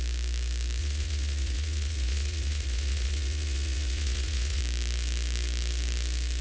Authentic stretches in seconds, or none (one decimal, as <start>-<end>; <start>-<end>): 0.0-0.8; 4.6-6.4

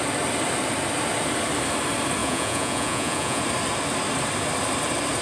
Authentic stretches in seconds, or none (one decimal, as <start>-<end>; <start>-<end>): 0.0-2.2; 3.4-5.2

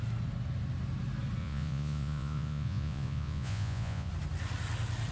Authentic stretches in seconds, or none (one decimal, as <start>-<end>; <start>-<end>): 0.0-1.4; 4.1-5.1

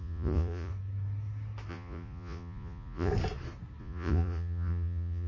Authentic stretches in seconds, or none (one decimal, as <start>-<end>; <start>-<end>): 0.7-1.7; 3.1-3.8

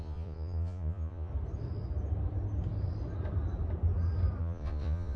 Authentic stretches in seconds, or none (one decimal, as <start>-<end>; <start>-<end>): 1.3-4.4